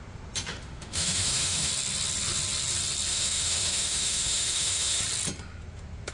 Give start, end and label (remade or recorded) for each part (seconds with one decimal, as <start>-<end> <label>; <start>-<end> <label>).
0.0-0.5 recorded; 0.5-1.7 remade; 1.7-3.1 recorded; 3.1-5.0 remade; 5.0-6.1 recorded